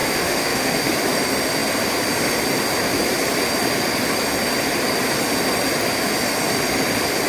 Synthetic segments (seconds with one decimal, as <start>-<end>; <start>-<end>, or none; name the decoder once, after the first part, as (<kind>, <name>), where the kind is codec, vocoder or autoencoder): 0.0-0.9 (autoencoder, DAC-VAE)